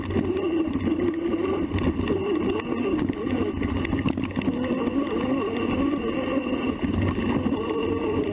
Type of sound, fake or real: real